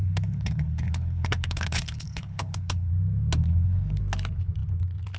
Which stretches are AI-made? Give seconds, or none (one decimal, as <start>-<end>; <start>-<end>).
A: 0.0-2.9; 3.4-4.0